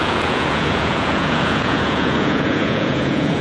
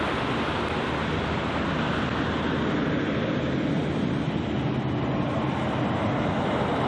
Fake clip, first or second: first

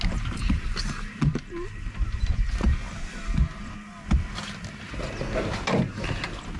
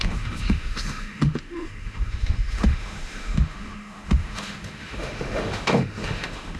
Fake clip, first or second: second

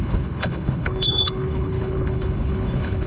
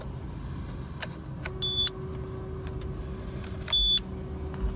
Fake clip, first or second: first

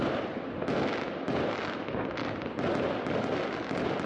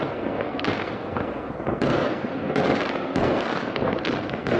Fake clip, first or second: second